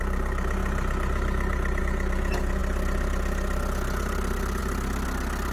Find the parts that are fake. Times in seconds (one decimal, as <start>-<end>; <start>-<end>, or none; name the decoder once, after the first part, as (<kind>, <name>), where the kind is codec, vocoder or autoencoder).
none